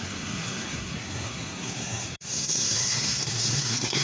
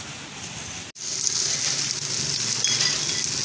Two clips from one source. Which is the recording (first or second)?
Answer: second